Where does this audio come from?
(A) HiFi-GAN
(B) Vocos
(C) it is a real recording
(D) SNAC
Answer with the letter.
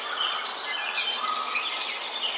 C